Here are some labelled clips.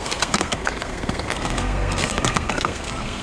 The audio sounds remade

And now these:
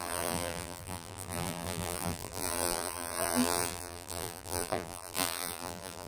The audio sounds remade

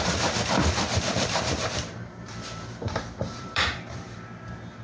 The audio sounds remade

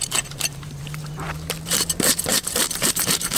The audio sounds remade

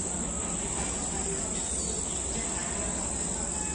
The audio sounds recorded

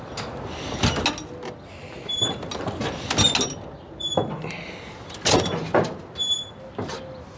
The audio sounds recorded